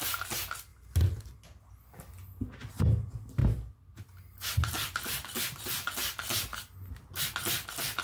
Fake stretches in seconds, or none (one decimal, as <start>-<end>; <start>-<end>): none